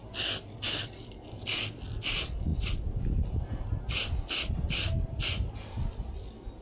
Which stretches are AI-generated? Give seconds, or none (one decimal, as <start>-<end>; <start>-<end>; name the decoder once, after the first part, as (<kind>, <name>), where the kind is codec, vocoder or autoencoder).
none